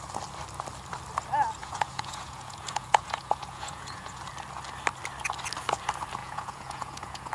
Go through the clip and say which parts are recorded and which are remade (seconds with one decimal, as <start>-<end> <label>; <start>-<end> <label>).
0.0-1.6 recorded; 1.6-4.2 remade; 4.2-6.2 recorded; 6.2-7.3 remade